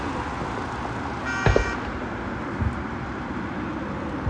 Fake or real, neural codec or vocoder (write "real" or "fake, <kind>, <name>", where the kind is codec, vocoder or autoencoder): real